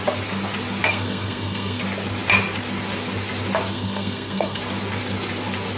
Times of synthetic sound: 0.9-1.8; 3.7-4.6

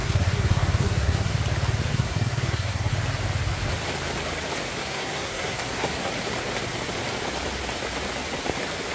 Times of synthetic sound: 0.0-1.3; 1.9-2.9; 4.8-6.1

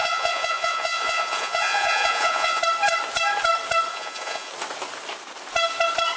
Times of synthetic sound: 0.0-2.6; 3.9-4.5